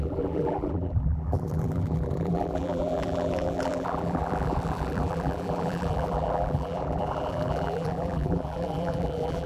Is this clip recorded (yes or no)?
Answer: no